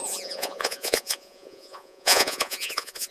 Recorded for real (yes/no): no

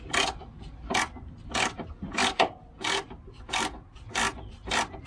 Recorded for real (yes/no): yes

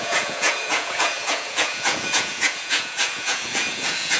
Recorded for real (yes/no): no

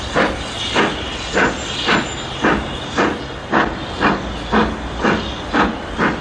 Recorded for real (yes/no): yes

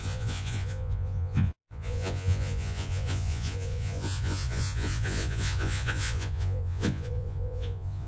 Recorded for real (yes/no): no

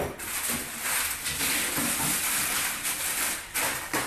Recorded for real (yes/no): yes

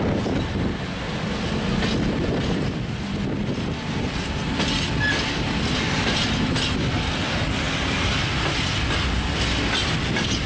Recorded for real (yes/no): yes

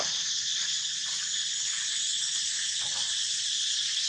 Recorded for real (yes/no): yes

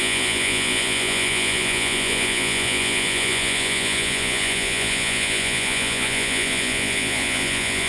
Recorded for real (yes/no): no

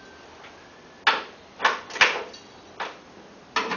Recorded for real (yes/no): yes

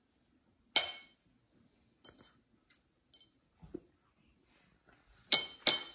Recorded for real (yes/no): yes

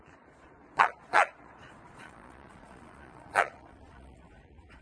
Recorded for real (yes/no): no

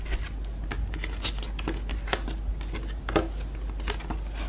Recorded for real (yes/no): yes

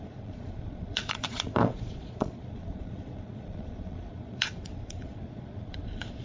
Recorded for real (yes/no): no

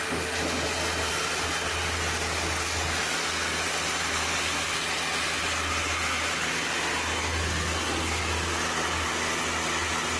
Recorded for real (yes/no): yes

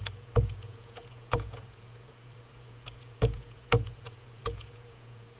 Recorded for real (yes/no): no